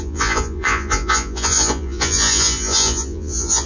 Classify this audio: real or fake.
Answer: fake